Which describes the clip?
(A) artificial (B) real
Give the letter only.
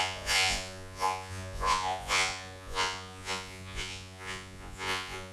A